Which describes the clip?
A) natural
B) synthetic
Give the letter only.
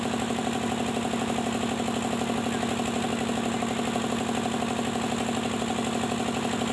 A